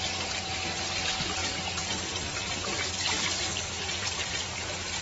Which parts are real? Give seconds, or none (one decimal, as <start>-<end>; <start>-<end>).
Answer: 0.0-1.4; 4.4-5.0